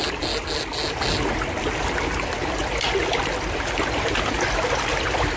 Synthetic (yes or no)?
no